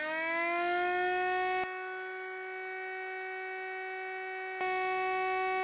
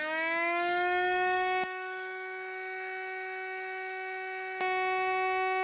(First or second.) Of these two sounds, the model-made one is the second